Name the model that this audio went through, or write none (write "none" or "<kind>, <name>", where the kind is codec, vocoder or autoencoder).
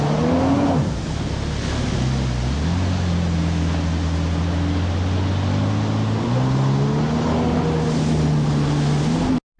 none